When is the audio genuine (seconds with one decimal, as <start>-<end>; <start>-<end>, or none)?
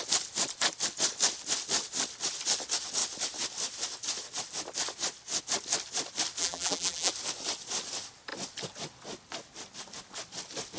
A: 0.0-6.4; 7.1-10.8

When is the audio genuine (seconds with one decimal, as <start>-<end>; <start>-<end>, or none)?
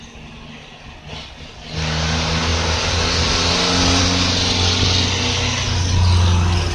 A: 0.0-6.7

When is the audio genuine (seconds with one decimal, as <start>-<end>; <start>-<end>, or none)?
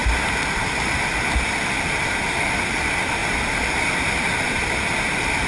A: 0.0-5.5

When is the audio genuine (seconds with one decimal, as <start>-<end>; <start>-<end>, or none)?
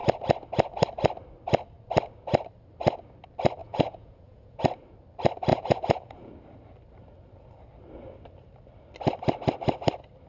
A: 0.0-3.6; 4.6-5.5; 6.3-10.3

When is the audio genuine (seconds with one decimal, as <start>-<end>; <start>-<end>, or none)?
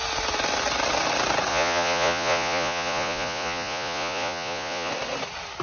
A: 0.0-1.5; 4.9-5.6